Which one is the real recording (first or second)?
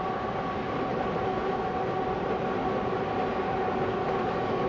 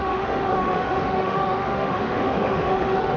first